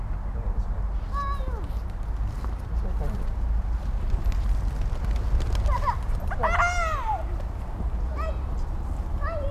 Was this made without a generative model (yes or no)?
yes